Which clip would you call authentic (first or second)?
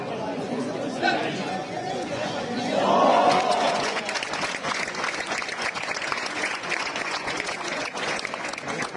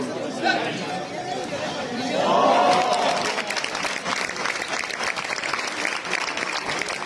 second